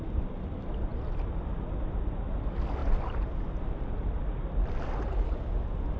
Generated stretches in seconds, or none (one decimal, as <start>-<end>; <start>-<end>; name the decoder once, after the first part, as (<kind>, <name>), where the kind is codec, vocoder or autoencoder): none